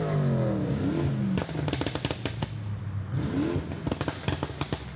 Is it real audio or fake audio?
real